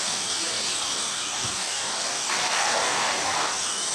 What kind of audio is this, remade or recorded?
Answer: remade